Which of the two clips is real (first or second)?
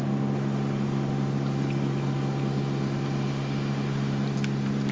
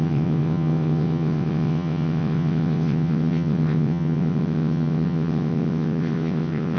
first